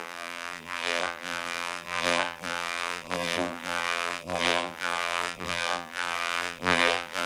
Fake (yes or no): yes